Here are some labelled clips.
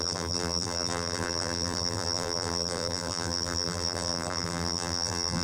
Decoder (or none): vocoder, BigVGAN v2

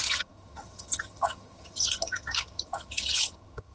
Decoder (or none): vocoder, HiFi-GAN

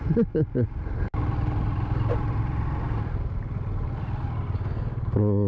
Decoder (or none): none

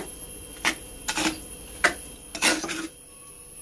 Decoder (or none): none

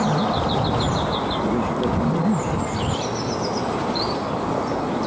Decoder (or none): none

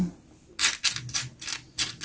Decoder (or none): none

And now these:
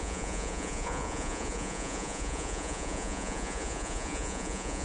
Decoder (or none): vocoder, Vocos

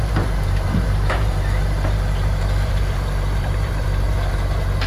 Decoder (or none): vocoder, BigVGAN v2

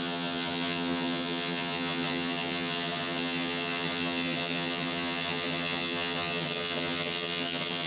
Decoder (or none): vocoder, HiFi-GAN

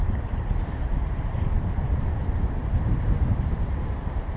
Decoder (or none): vocoder, BigVGAN v2